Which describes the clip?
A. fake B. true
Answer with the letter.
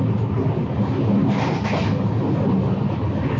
B